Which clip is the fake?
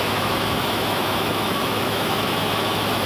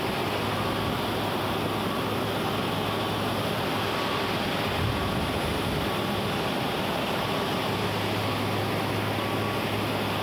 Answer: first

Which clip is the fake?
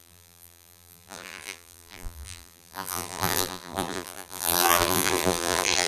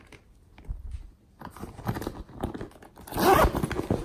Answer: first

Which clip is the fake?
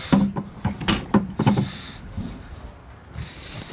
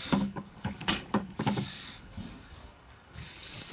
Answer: second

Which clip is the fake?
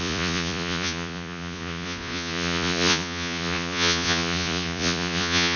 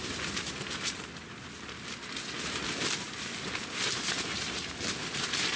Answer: first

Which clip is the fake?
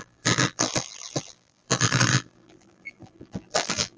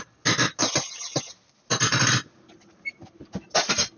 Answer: first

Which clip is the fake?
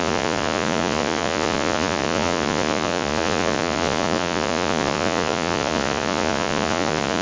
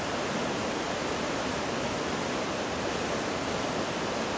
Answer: first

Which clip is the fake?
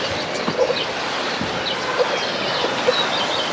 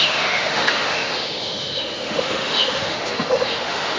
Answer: second